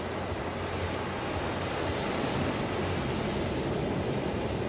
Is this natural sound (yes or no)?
yes